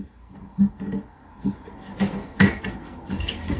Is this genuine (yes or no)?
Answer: no